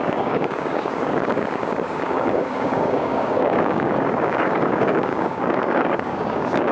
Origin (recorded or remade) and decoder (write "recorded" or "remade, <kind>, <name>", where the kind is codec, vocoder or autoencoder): remade, codec, DAC